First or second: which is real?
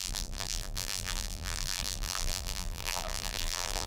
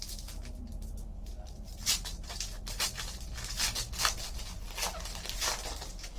second